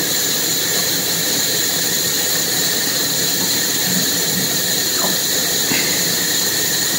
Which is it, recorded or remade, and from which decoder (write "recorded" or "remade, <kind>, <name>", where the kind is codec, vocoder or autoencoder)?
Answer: remade, vocoder, BigVGAN v2